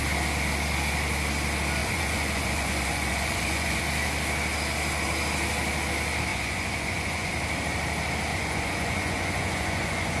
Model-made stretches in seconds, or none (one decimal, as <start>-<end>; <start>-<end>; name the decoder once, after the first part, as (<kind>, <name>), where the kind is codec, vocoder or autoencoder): 1.8-3.8 (vocoder, Vocos); 6.3-7.3; 8.3-10.2